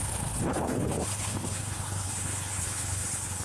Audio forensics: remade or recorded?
remade